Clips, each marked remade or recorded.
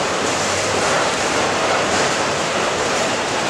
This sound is remade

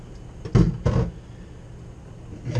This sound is recorded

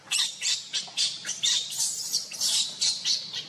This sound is remade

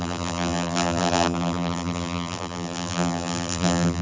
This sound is remade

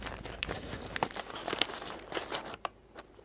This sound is remade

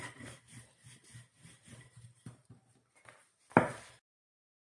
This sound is remade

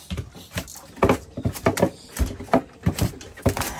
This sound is recorded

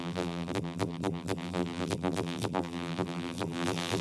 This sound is remade